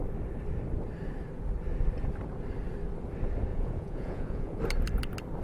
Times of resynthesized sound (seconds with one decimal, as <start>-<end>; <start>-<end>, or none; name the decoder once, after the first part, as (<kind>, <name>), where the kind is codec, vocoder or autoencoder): 3.5-4.6 (vocoder, Vocos)